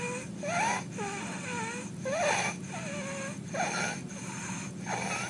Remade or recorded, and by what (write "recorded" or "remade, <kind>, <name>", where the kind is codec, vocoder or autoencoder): recorded